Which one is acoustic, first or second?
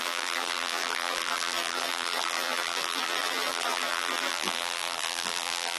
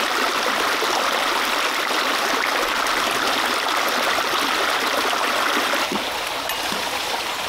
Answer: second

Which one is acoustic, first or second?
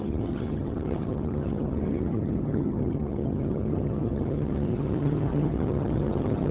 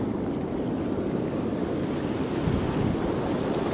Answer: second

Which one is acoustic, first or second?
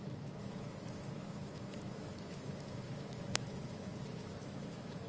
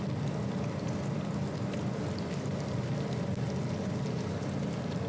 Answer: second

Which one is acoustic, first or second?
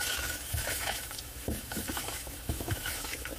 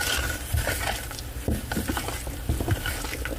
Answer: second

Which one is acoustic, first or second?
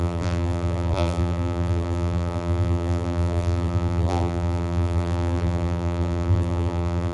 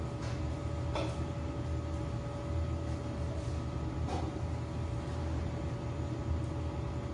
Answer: second